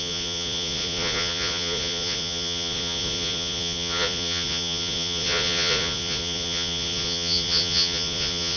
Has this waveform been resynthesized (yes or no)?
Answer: yes